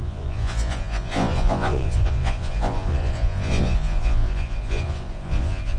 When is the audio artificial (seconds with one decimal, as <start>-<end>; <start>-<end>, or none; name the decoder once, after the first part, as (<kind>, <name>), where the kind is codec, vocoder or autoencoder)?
0.0-5.8 (vocoder, Vocos)